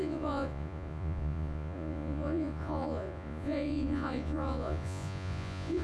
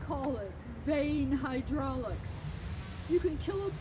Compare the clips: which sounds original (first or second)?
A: second